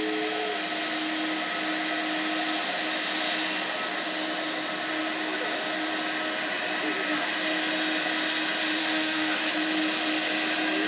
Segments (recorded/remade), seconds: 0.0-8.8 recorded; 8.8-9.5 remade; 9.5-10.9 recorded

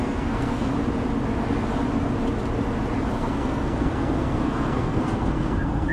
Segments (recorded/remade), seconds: 0.0-0.7 remade; 0.7-3.1 recorded; 3.1-5.9 remade

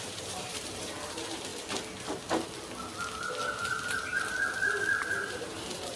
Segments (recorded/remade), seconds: 0.0-1.5 remade; 1.5-5.1 recorded; 5.1-6.0 remade

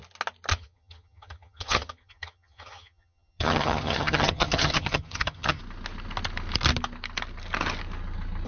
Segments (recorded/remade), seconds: 0.0-0.5 recorded; 0.5-5.6 remade; 5.6-8.5 recorded

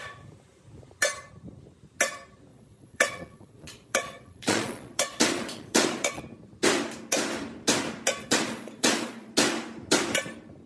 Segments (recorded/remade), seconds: 0.0-2.5 recorded; 2.5-6.2 remade; 6.2-8.2 recorded; 8.2-9.3 remade; 9.3-10.7 recorded

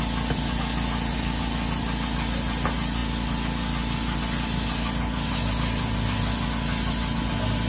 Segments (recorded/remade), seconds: 0.0-7.7 recorded

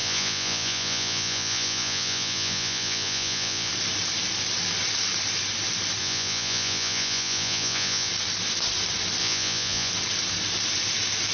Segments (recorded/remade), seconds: 0.0-3.7 remade; 3.7-6.0 recorded; 6.0-8.1 remade; 8.1-9.2 recorded; 9.2-9.9 remade; 9.9-11.3 recorded